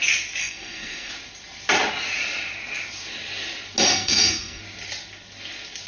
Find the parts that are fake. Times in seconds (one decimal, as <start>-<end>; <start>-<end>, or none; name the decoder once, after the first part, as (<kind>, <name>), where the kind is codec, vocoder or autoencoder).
0.4-1.1 (codec, SNAC); 3.9-4.6